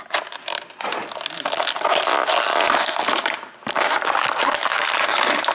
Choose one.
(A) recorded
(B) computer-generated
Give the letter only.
A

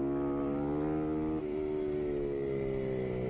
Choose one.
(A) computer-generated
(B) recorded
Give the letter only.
B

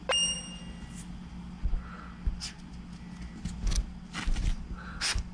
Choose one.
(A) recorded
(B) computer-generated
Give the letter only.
A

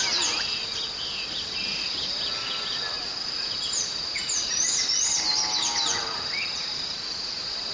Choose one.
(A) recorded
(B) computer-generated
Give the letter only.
A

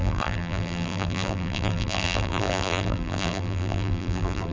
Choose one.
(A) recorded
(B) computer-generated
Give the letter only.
B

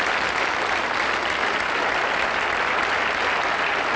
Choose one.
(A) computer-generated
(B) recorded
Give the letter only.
B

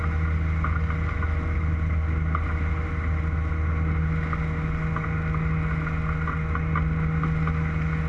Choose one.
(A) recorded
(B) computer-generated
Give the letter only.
A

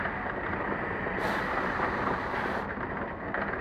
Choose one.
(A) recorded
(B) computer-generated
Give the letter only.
A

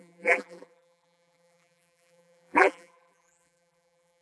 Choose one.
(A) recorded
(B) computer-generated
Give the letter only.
B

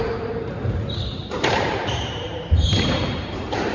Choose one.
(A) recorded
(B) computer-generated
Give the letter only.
B